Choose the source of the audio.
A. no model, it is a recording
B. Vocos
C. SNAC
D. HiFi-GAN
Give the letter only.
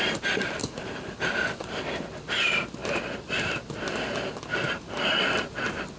A